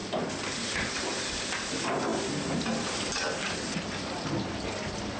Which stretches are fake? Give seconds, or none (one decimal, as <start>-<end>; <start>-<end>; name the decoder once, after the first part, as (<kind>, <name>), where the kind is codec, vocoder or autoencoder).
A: none